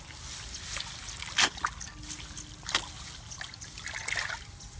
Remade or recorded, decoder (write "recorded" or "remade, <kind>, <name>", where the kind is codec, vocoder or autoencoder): recorded